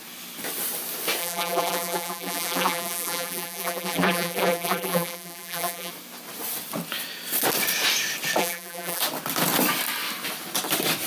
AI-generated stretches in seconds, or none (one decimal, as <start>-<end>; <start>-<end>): 1.2-5.9; 8.4-9.0